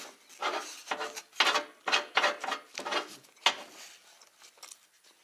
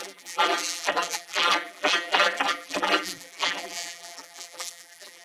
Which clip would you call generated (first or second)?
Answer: second